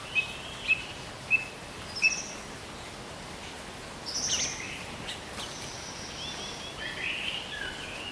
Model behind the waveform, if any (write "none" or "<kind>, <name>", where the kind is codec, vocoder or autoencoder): none